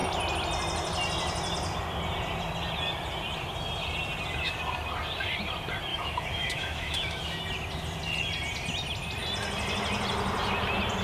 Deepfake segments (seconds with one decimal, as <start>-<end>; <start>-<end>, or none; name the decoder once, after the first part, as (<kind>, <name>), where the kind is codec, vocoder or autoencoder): 5.9-7.2 (autoencoder, DAC-VAE)